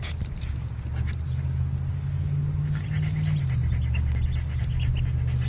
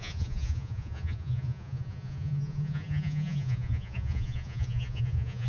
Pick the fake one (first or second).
second